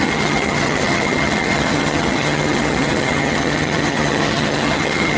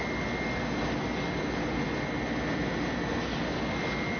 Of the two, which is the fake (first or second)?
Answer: first